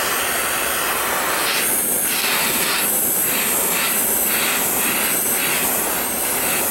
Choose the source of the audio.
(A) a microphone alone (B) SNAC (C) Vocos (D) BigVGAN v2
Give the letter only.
A